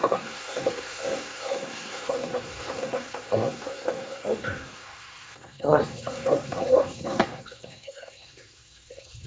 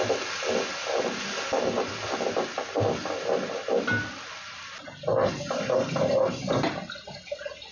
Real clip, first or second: second